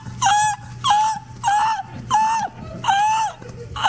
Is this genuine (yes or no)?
yes